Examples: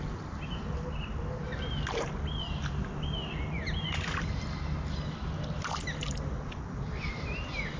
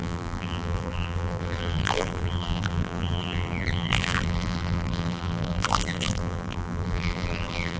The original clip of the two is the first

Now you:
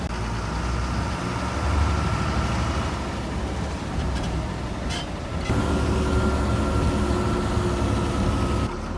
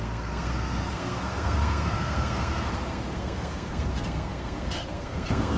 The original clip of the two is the first